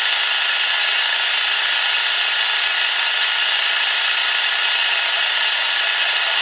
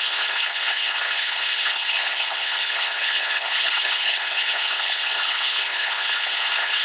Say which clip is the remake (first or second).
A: second